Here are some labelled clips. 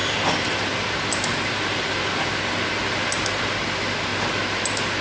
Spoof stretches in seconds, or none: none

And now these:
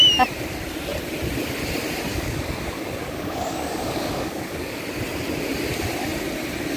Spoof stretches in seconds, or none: 2.1-4.8 (codec, DAC)

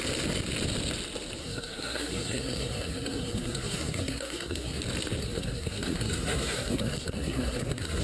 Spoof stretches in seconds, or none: 1.4-4.8 (codec, SNAC); 5.2-8.0

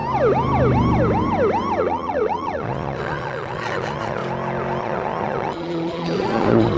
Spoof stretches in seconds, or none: 1.8-4.2 (vocoder, Vocos); 4.8-6.8